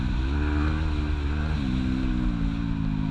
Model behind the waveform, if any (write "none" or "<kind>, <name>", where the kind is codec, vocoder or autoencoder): none